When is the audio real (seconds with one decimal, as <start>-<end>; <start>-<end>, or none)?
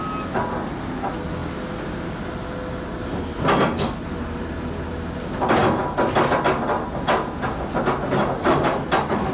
0.0-9.3